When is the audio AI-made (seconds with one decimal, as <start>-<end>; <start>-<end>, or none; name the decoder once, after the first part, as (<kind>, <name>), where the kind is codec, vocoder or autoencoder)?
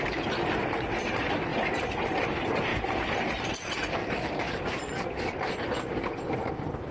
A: 4.0-5.0 (vocoder, BigVGAN v2)